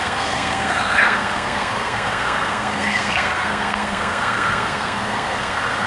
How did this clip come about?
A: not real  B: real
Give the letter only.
A